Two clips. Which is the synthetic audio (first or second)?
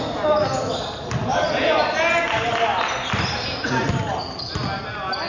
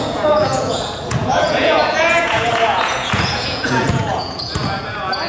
second